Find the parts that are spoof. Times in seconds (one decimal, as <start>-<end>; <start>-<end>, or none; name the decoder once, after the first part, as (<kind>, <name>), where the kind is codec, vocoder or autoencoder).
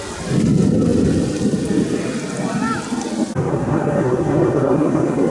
3.5-5.3 (codec, SNAC)